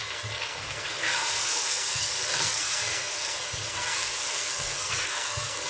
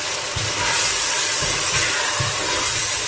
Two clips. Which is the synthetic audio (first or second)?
first